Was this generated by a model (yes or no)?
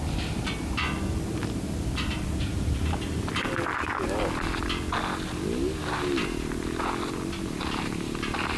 no